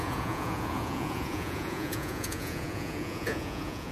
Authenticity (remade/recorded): remade